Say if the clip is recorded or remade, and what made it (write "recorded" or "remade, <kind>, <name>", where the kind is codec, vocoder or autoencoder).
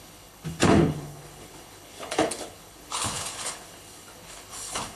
remade, codec, HILCodec